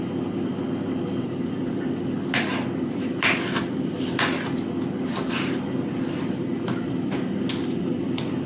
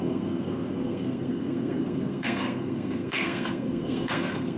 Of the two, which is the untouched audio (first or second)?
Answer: first